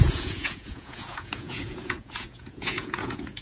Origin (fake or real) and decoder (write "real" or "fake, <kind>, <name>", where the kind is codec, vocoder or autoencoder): fake, vocoder, Vocos